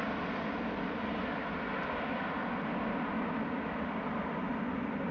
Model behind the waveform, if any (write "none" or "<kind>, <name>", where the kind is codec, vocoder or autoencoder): none